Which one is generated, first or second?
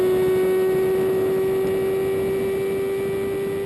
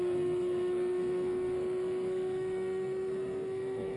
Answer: second